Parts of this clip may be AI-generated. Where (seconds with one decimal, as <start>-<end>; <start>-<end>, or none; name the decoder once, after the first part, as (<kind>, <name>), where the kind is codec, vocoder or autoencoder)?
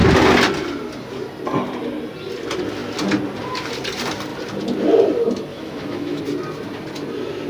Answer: 5.5-6.2 (autoencoder, DAC-VAE)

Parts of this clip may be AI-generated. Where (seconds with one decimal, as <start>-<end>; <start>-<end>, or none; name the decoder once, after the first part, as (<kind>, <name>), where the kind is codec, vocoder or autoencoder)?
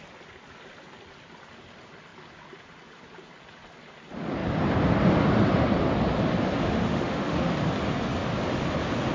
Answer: 6.6-7.5 (autoencoder, DAC-VAE)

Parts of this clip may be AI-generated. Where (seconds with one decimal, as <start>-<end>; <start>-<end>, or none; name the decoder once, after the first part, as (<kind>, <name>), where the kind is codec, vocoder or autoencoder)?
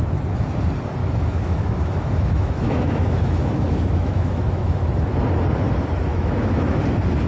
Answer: 1.0-4.8 (autoencoder, DAC-VAE); 6.1-6.8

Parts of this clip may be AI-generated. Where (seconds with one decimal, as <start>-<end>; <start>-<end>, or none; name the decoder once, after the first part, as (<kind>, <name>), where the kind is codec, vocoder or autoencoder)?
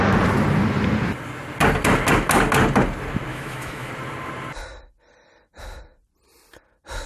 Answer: 3.3-3.9 (autoencoder, DAC-VAE)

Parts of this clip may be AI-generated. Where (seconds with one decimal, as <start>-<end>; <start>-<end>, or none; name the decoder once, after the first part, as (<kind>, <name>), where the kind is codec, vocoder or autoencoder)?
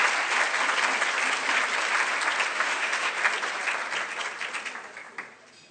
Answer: 2.5-3.1 (autoencoder, DAC-VAE)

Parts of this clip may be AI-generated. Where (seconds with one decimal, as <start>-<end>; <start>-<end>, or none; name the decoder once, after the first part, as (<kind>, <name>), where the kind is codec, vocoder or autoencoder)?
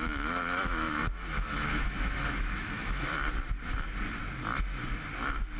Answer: 0.0-3.1 (autoencoder, DAC-VAE)